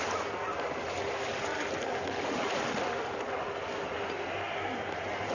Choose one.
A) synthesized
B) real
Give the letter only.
B